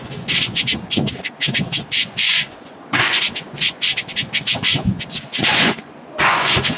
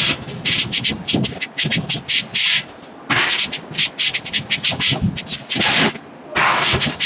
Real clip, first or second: second